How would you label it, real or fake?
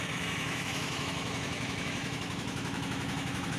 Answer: fake